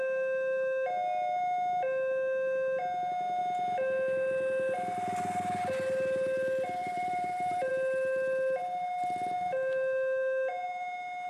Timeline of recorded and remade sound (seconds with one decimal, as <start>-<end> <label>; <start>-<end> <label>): 0.0-6.8 recorded; 6.8-7.7 remade; 7.7-11.3 recorded